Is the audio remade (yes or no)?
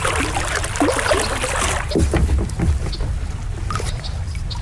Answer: no